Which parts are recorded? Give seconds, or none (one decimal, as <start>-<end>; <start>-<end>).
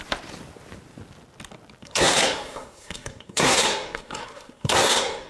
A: 0.0-1.8